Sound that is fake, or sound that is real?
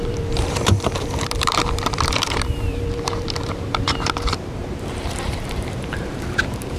fake